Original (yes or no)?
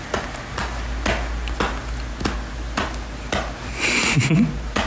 yes